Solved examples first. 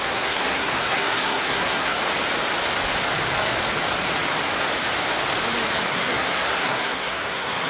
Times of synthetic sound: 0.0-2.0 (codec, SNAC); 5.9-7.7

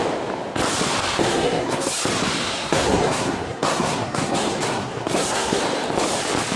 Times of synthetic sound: 1.2-1.9 (codec, SNAC); 2.4-5.6

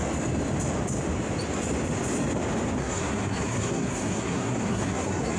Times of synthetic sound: 2.8-5.4 (codec, SNAC)

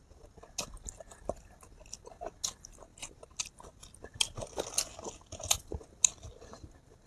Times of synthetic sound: none

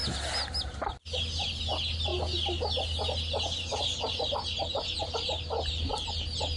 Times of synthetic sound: none

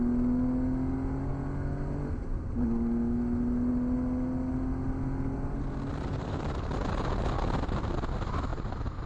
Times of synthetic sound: 5.9-7.1 (vocoder, BigVGAN v2); 8.5-9.1